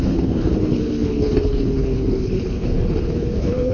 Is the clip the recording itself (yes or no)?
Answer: no